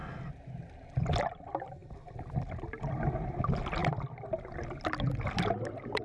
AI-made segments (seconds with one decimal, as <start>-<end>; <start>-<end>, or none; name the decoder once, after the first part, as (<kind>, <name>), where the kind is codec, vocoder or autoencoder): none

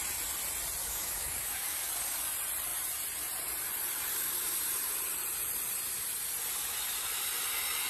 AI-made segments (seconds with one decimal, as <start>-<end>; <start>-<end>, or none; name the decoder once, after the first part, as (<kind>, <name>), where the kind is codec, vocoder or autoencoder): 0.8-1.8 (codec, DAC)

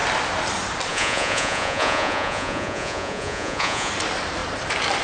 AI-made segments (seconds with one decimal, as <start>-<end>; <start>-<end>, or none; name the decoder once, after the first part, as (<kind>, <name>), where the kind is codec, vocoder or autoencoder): 0.9-3.9 (vocoder, Vocos)

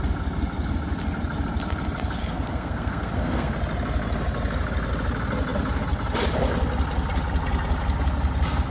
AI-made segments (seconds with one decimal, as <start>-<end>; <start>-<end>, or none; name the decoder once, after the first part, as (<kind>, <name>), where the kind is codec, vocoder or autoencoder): 2.2-3.5 (codec, SNAC)

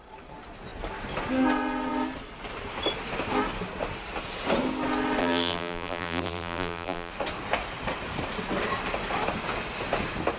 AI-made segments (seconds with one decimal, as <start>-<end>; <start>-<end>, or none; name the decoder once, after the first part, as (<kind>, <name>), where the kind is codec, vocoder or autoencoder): 5.2-7.1 (vocoder, BigVGAN v2)